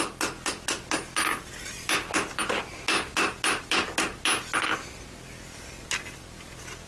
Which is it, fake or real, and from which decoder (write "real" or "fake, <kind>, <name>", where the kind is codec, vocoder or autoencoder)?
real